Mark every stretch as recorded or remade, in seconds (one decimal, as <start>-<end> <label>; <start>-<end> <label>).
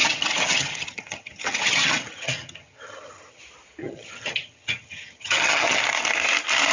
0.0-3.4 remade; 3.4-3.8 recorded; 3.8-5.8 remade; 5.8-6.7 recorded